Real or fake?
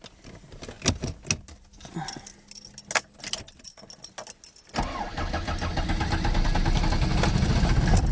real